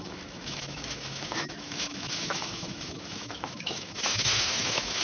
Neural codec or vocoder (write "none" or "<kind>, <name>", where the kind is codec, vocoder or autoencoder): autoencoder, DAC-VAE